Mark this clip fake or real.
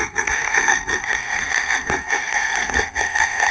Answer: fake